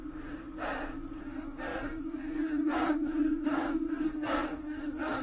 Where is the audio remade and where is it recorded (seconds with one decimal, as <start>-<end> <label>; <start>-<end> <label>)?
0.0-1.2 recorded; 1.2-5.2 remade